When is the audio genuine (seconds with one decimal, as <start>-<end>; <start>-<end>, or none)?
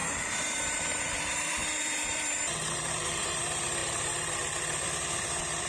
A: 3.4-3.8; 4.8-5.7